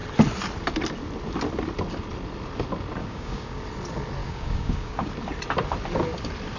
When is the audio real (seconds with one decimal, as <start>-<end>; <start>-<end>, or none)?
0.0-3.0; 3.6-4.2; 5.1-6.6